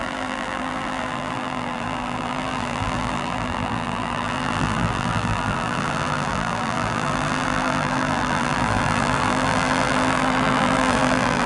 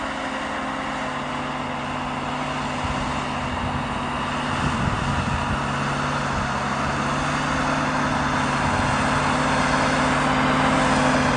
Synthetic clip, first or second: first